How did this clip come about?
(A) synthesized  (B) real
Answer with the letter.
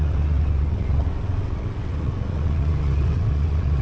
A